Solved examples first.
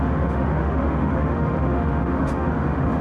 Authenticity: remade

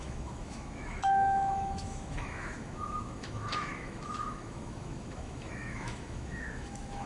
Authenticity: remade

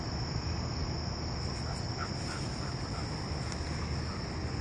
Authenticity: recorded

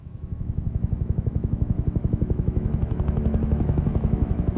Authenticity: remade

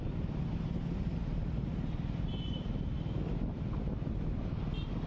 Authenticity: recorded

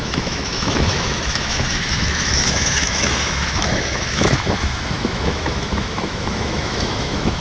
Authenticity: remade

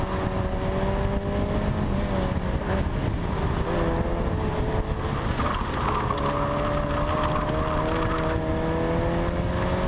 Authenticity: recorded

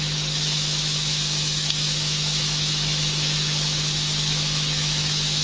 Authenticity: remade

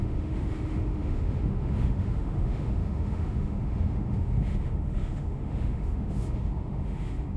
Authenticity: remade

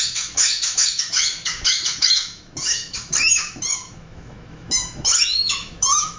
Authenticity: remade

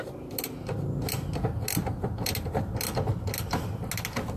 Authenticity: recorded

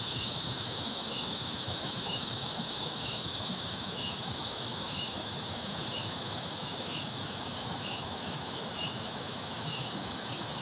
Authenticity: remade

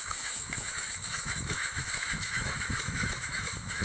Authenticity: remade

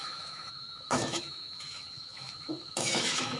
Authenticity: remade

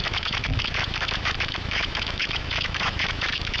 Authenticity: remade